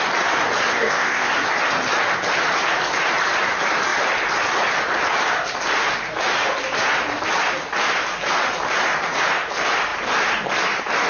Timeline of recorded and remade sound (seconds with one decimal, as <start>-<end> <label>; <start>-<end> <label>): 0.0-0.7 recorded; 0.7-1.3 remade; 1.3-11.1 recorded